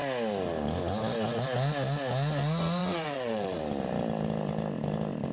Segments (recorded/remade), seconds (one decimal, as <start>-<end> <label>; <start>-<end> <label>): 0.0-2.8 recorded; 2.8-3.6 remade; 3.6-5.3 recorded